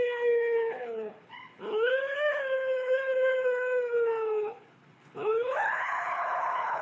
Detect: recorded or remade remade